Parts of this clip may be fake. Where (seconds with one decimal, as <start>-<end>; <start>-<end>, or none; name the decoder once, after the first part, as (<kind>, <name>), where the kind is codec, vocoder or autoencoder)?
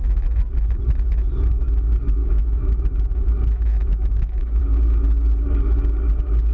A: 2.2-3.3 (autoencoder, DAC-VAE); 3.8-4.6